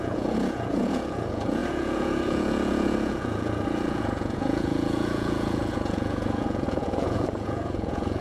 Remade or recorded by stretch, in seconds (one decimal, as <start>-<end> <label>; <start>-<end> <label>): 0.0-8.2 remade